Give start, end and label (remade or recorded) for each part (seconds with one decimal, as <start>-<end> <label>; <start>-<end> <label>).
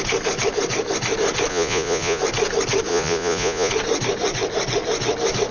0.0-1.5 recorded; 1.5-2.2 remade; 2.2-2.9 recorded; 2.9-3.7 remade; 3.7-5.5 recorded